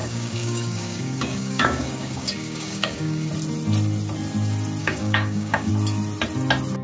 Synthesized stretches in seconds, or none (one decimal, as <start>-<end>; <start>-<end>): 0.0-3.3; 4.8-5.7